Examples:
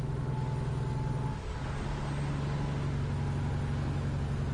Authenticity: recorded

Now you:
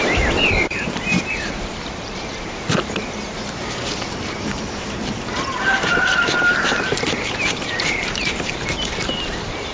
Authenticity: remade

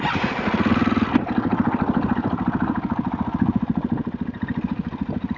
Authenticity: recorded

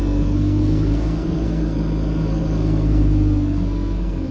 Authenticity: remade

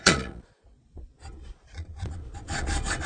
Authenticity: remade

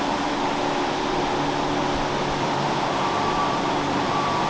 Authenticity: remade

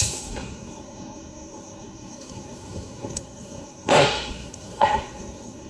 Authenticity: remade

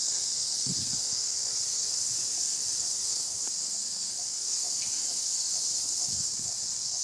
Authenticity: remade